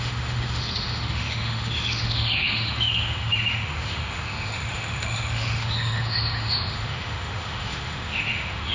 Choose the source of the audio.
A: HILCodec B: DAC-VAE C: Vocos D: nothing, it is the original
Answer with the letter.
B